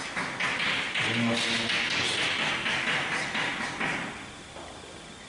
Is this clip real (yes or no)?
yes